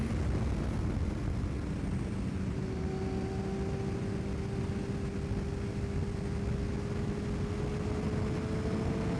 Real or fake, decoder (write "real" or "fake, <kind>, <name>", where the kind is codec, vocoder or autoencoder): real